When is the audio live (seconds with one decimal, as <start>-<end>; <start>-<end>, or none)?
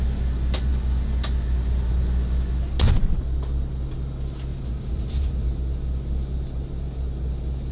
0.0-4.5; 5.6-7.7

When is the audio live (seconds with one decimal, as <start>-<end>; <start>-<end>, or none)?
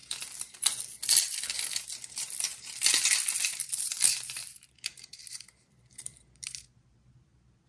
0.0-3.5; 7.1-7.7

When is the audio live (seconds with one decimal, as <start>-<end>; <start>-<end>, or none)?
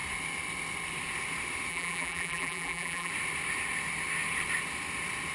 0.0-1.7; 3.1-5.3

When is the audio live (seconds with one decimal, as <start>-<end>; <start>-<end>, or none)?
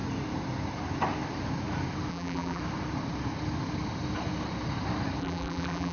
0.0-2.1; 2.6-5.2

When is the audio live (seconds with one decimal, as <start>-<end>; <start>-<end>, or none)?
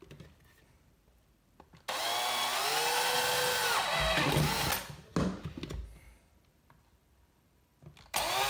0.0-8.5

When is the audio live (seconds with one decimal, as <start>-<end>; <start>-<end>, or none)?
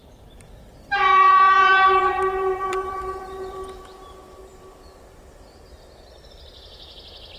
3.8-7.4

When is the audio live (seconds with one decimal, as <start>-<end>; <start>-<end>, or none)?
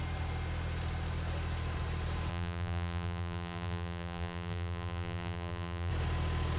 0.0-2.3; 5.9-6.6